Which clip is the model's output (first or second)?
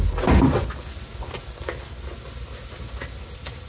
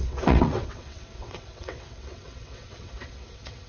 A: second